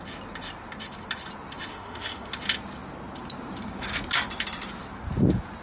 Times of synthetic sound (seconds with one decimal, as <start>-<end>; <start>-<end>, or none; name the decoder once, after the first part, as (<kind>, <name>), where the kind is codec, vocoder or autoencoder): 1.7-2.3 (autoencoder, DAC-VAE)